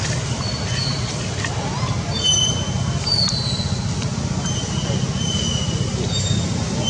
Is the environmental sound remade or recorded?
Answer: recorded